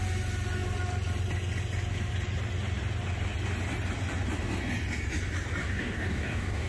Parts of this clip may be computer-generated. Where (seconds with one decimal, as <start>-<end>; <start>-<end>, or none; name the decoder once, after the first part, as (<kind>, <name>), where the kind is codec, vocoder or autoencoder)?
5.6-6.7 (codec, DAC)